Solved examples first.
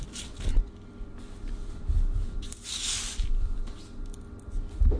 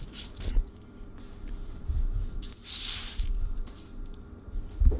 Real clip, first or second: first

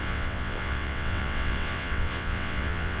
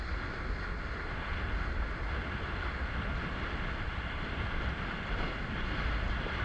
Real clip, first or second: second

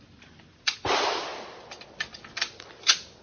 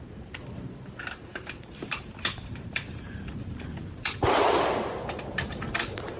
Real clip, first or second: first